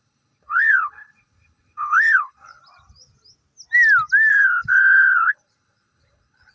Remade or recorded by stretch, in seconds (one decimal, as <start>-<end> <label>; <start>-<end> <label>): 0.0-2.6 remade; 2.6-4.3 recorded; 4.3-6.5 remade